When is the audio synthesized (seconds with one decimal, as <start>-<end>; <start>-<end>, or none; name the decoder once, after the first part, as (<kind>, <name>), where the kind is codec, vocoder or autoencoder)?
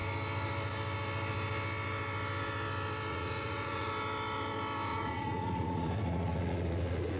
3.1-3.9 (vocoder, Vocos); 4.9-7.2